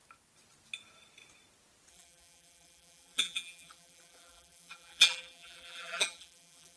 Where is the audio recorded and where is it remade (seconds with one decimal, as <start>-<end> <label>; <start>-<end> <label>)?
0.0-1.9 recorded; 1.9-6.8 remade